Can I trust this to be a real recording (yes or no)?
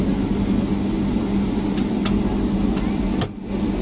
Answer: yes